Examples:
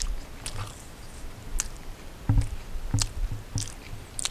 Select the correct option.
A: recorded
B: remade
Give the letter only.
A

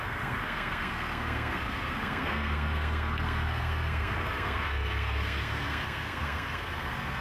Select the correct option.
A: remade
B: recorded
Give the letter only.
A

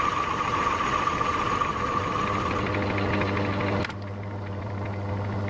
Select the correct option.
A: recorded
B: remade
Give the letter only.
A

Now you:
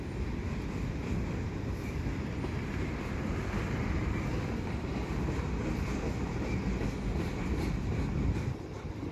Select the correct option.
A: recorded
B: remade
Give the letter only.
A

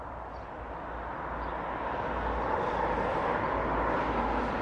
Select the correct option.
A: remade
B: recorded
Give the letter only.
B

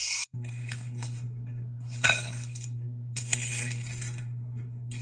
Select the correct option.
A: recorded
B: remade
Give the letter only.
B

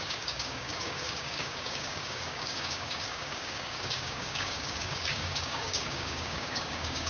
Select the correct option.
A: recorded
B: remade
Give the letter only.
B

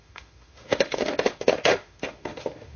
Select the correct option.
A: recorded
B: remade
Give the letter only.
B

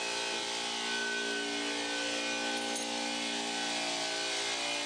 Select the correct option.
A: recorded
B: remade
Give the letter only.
A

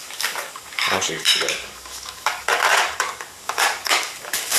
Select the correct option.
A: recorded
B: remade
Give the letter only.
B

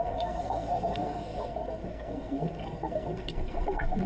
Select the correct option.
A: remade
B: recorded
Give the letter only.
A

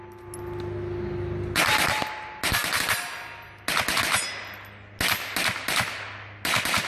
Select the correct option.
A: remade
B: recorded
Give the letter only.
B